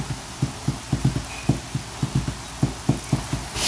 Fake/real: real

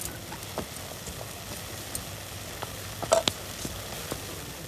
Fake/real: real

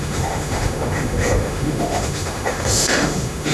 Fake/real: fake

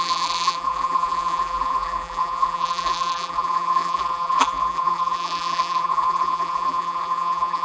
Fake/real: fake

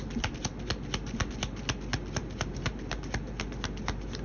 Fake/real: real